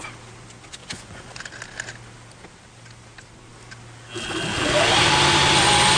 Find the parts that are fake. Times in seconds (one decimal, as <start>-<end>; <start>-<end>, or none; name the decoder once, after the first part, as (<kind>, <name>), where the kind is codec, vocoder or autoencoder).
0.8-1.4 (vocoder, Vocos)